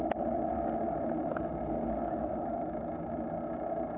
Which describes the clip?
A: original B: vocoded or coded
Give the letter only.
A